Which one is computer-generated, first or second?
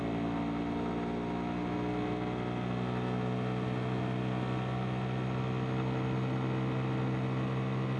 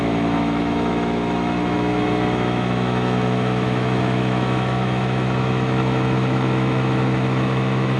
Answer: second